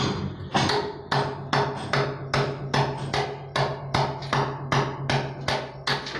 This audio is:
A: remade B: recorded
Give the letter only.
B